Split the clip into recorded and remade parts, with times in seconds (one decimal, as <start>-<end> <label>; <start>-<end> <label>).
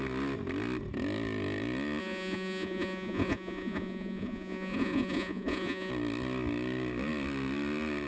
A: 0.0-2.0 recorded; 2.0-5.9 remade; 5.9-8.1 recorded